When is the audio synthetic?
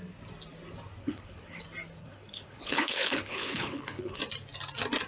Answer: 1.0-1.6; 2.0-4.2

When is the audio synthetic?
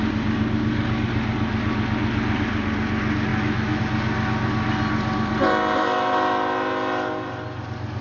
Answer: 3.3-3.8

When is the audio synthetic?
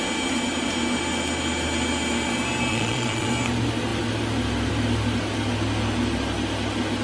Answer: 2.7-3.3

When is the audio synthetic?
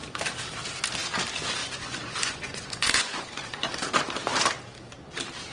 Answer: 1.6-3.7